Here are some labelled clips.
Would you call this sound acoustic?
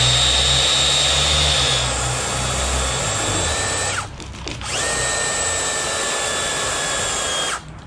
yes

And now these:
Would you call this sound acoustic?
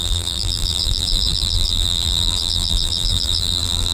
no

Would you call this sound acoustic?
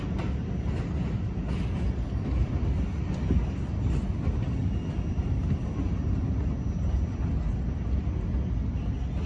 yes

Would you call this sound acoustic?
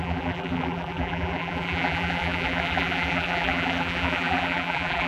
no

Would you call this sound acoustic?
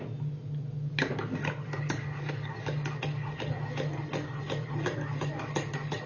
yes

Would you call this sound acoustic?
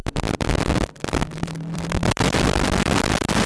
no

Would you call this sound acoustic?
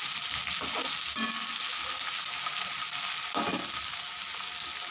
yes